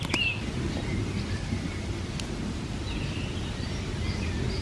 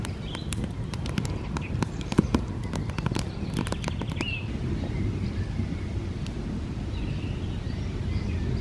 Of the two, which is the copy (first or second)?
second